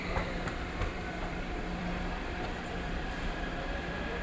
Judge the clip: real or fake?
fake